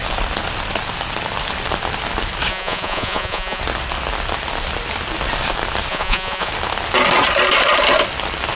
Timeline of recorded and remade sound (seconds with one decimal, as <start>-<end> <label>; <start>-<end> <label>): 0.0-2.5 recorded; 2.5-3.6 remade; 3.6-5.9 recorded; 5.9-6.5 remade; 6.5-8.5 recorded